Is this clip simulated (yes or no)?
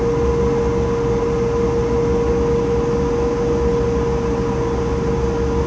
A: no